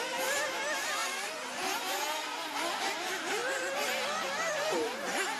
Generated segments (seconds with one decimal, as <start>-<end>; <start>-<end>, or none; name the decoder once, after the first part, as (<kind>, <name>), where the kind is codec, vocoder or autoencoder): none